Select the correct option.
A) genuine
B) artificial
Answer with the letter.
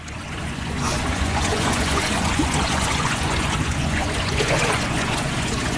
B